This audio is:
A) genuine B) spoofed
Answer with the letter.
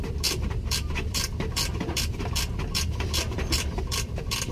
B